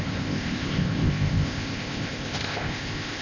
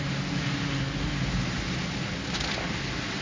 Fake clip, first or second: first